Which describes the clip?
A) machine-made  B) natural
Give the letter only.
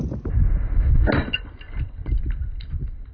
B